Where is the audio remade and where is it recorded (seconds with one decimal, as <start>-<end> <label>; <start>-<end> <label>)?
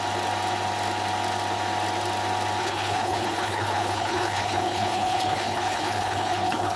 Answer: 0.0-2.6 recorded; 2.6-6.8 remade